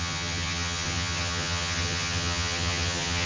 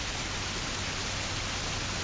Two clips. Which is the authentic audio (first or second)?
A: second